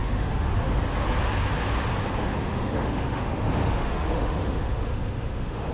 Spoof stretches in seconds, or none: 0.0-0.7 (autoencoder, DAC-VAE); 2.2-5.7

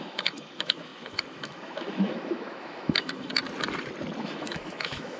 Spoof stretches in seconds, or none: 0.0-3.3 (autoencoder, DAC-VAE); 4.2-5.2